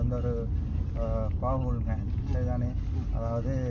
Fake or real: real